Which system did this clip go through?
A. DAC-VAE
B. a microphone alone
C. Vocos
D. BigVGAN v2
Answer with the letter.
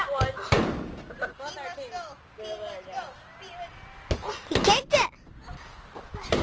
B